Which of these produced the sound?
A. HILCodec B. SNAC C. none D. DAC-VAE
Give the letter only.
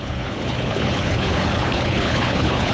A